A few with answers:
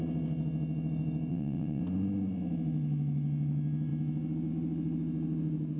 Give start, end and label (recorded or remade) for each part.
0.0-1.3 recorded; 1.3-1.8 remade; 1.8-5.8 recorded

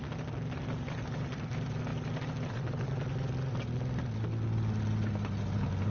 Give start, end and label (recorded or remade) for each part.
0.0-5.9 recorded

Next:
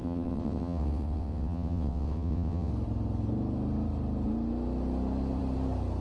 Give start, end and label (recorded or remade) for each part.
0.0-2.7 remade; 2.7-6.0 recorded

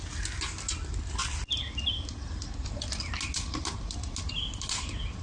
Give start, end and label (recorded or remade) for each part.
0.0-5.2 recorded

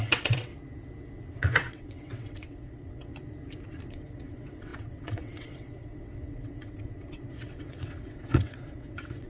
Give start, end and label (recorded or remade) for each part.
0.0-0.5 remade; 0.5-1.3 recorded; 1.3-3.1 remade; 3.1-3.9 recorded; 3.9-9.3 remade